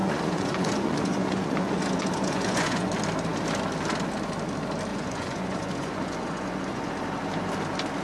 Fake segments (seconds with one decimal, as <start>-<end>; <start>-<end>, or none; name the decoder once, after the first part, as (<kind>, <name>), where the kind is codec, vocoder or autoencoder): 0.0-2.9 (vocoder, Vocos); 4.9-6.9